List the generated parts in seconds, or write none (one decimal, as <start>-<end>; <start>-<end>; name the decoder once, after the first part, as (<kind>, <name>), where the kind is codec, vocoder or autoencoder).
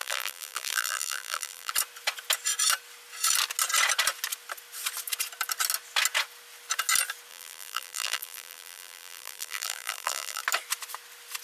0.0-1.7 (vocoder, BigVGAN v2); 7.3-10.4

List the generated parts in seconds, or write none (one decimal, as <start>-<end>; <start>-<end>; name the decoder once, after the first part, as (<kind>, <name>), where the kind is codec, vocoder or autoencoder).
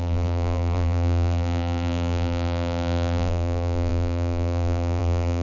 0.0-5.4 (vocoder, BigVGAN v2)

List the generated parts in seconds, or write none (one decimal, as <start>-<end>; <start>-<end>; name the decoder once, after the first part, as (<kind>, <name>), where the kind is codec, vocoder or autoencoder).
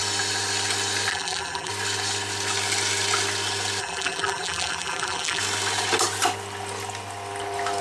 1.1-1.7 (vocoder, BigVGAN v2); 3.8-5.4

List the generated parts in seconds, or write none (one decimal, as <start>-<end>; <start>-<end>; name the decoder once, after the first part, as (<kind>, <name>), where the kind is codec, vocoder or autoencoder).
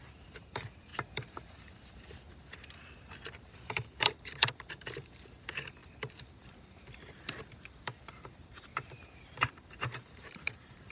0.0-10.9 (vocoder, BigVGAN v2)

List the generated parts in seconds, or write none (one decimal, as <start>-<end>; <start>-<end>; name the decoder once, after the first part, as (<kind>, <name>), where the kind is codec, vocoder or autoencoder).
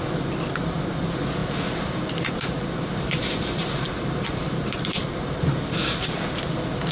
1.4-5.5 (vocoder, BigVGAN v2)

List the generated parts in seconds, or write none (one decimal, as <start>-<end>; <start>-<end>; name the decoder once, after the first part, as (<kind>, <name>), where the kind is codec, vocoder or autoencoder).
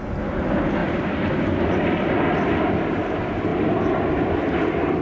0.8-2.2 (vocoder, BigVGAN v2); 3.5-4.3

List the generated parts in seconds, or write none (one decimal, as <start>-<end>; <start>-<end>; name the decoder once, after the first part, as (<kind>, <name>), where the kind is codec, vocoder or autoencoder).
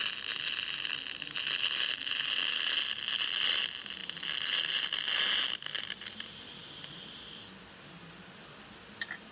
none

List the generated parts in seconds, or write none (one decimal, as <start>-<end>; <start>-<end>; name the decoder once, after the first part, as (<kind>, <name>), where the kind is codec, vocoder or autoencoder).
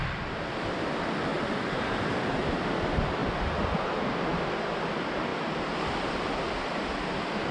1.3-2.1 (vocoder, BigVGAN v2)